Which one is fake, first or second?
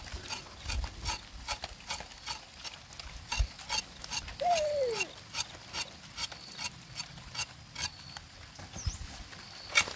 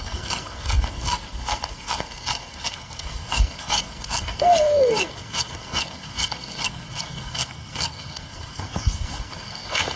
second